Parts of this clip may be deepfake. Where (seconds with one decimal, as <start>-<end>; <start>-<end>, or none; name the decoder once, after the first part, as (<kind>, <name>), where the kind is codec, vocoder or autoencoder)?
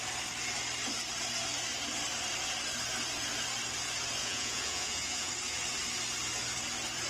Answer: 4.2-5.3 (vocoder, Vocos)